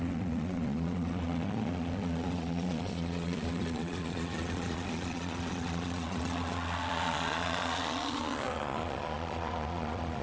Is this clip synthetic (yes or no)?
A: yes